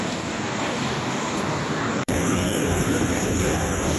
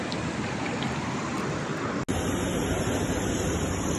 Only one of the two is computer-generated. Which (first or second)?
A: first